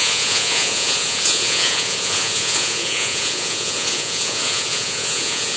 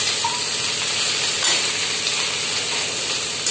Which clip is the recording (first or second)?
second